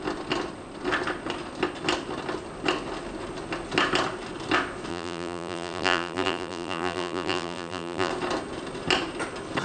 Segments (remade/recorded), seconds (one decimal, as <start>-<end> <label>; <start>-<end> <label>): 0.0-4.9 recorded; 4.9-8.1 remade; 8.1-9.6 recorded